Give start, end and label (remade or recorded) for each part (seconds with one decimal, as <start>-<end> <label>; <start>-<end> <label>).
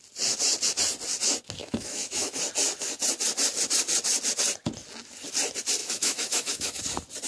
0.0-1.6 recorded; 1.6-2.4 remade; 2.4-5.8 recorded; 5.8-6.8 remade; 6.8-7.3 recorded